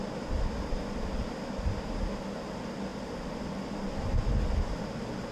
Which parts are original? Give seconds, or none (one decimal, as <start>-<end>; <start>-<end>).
0.0-5.3